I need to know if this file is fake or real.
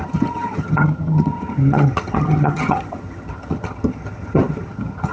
fake